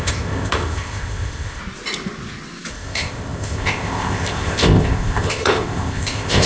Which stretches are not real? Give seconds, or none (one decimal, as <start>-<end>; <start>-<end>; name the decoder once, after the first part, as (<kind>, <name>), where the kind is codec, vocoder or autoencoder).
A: 0.0-1.6 (codec, ZipCodec); 2.7-6.5